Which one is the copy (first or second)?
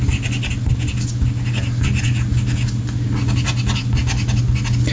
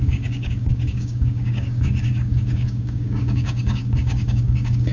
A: second